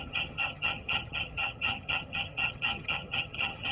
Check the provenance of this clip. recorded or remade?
remade